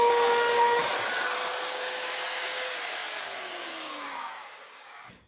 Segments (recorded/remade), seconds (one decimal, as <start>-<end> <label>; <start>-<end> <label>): 0.0-0.8 remade; 0.8-1.7 recorded; 1.7-5.3 remade